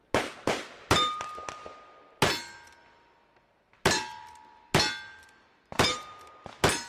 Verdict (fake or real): real